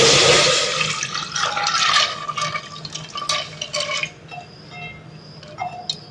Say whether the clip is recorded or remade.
recorded